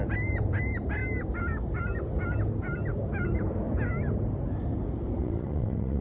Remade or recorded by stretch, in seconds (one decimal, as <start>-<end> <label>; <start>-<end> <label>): 0.0-5.2 recorded; 5.2-6.0 remade